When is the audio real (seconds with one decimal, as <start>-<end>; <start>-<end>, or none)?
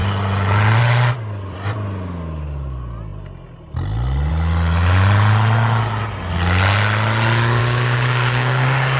0.0-7.6